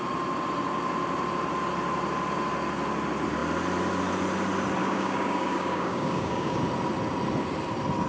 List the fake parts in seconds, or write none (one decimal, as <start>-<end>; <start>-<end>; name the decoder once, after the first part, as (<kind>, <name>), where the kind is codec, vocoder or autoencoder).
4.8-6.6 (codec, DAC)

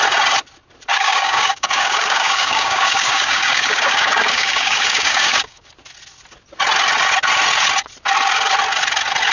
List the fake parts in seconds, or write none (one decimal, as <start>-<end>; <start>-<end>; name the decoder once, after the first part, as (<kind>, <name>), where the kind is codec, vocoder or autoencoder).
0.9-5.7 (codec, DAC)

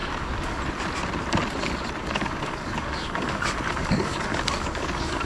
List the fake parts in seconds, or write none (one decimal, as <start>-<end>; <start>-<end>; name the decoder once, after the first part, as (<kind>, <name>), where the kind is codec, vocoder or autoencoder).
0.0-0.6 (codec, DAC); 2.0-5.3

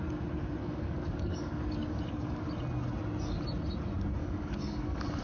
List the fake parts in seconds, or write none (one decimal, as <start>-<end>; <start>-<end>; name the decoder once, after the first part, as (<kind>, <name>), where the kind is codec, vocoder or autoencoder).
0.6-2.4 (codec, DAC); 4.2-5.2

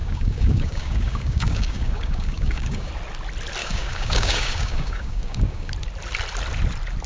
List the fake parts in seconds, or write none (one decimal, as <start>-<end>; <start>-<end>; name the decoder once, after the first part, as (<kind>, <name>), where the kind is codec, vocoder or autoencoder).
0.0-2.9 (codec, DAC); 3.6-5.7

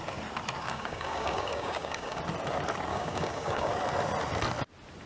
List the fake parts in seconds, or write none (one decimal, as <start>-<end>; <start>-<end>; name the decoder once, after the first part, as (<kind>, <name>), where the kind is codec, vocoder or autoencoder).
0.6-2.2 (codec, DAC); 2.9-3.7